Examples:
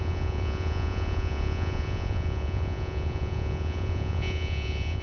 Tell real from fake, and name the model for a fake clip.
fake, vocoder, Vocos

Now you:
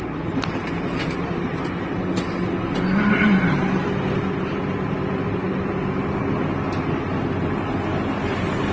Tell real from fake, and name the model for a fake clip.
real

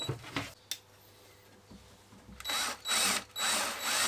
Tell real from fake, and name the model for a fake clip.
real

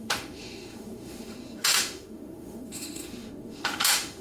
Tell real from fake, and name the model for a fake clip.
fake, autoencoder, DAC-VAE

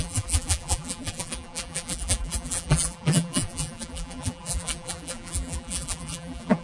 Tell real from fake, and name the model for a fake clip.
fake, vocoder, BigVGAN v2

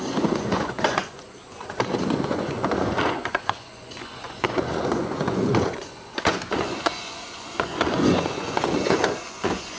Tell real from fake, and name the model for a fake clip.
fake, vocoder, Vocos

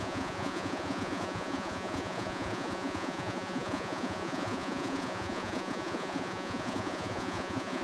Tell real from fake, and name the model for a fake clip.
fake, vocoder, Vocos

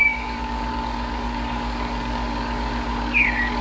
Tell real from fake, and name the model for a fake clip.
fake, codec, DAC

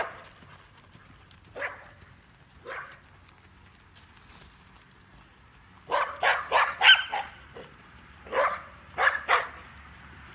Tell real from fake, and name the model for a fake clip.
real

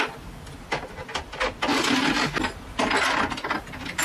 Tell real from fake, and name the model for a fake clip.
real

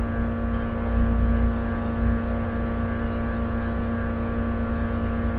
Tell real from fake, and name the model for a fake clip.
real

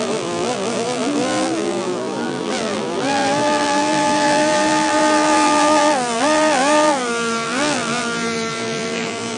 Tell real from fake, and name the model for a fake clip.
fake, vocoder, BigVGAN v2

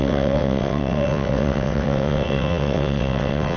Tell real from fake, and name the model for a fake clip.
fake, vocoder, WaveNeXt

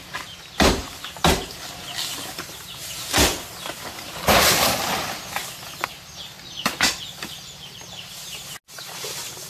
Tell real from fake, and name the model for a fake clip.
real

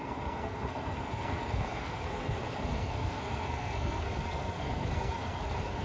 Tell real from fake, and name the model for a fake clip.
fake, codec, SNAC